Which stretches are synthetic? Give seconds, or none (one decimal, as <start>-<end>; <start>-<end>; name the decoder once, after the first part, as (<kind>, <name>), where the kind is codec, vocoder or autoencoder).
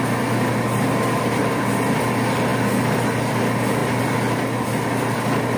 none